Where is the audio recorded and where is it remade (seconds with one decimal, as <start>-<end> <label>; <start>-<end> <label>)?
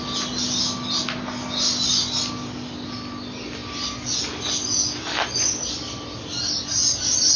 0.0-7.4 recorded